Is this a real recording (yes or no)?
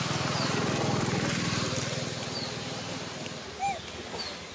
yes